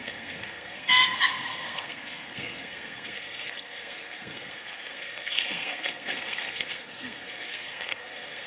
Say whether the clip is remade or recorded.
remade